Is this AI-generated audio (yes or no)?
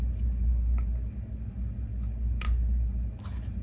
no